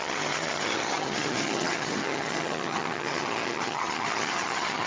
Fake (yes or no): yes